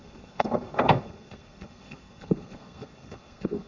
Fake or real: fake